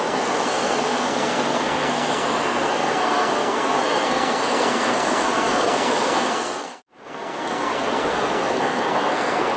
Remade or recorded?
remade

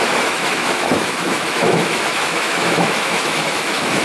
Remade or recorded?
remade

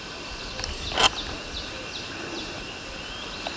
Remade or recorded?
recorded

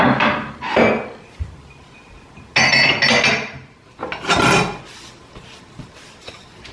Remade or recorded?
recorded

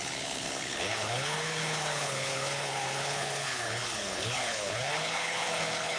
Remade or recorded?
remade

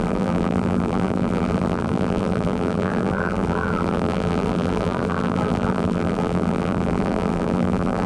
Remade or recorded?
remade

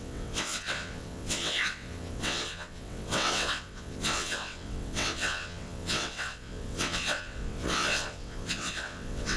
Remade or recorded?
remade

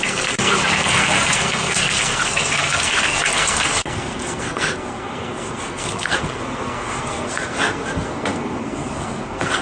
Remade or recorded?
remade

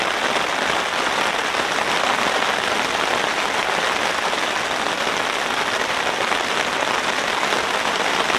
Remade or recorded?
remade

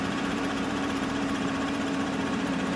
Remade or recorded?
remade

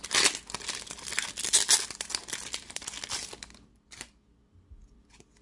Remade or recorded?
recorded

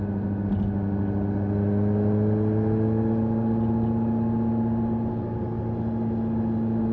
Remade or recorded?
recorded